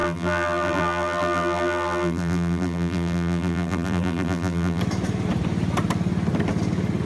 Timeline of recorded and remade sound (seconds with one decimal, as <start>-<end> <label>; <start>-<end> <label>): 0.0-4.8 remade; 4.8-7.1 recorded